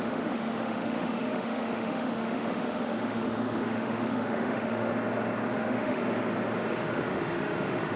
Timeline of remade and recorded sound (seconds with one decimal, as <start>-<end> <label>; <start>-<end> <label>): 0.0-4.9 remade; 4.9-5.5 recorded; 5.5-6.0 remade; 6.0-6.7 recorded; 6.7-8.0 remade